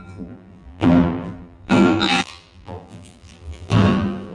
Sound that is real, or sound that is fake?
fake